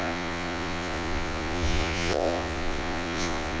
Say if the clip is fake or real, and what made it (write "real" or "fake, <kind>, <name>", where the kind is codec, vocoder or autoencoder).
fake, vocoder, Vocos